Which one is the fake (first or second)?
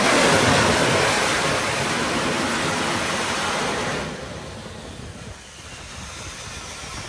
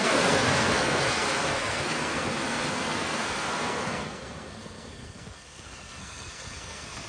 second